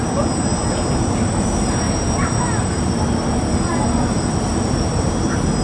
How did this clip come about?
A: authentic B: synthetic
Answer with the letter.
A